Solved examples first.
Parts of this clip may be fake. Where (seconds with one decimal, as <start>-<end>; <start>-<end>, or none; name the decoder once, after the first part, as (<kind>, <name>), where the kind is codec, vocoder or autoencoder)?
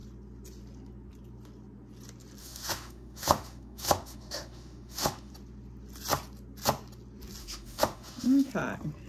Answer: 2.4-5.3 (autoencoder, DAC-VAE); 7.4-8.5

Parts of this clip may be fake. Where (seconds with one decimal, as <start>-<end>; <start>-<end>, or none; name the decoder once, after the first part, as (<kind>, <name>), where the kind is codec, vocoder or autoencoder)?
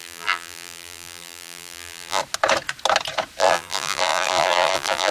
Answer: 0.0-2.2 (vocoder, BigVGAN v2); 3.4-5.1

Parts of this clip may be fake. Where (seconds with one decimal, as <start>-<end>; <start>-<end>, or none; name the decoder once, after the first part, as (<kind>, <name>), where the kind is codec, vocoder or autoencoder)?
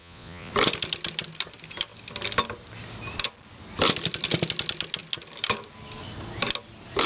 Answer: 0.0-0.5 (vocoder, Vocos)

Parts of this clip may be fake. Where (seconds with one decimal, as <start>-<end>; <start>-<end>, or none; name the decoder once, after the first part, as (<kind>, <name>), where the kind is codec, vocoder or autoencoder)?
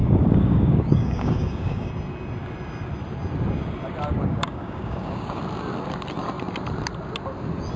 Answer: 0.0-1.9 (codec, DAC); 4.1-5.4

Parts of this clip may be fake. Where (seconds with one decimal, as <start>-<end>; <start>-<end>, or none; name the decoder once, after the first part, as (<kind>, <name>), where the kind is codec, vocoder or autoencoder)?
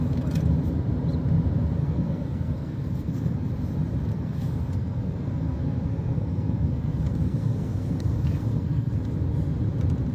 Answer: 1.8-3.5 (codec, SNAC); 4.1-9.0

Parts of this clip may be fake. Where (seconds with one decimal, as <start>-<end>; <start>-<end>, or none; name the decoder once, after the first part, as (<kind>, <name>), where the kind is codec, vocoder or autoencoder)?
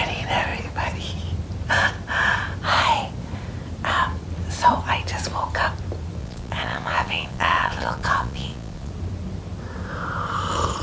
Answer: 6.2-8.9 (vocoder, Vocos)